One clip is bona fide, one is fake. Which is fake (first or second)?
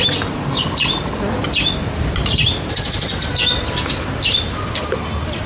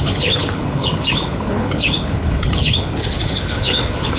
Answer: second